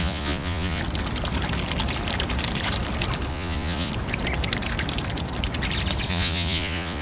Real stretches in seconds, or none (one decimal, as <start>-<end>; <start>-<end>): 0.8-3.3; 3.9-6.1